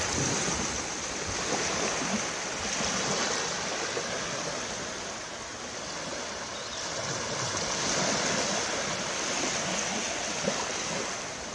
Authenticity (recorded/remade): recorded